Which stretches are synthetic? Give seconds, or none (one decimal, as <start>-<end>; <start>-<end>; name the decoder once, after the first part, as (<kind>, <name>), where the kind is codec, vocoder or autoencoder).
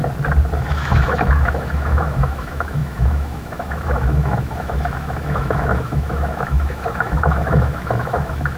0.6-8.6 (autoencoder, DAC-VAE)